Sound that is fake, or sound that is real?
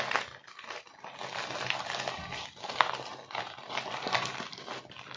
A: real